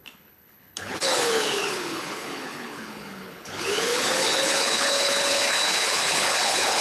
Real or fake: fake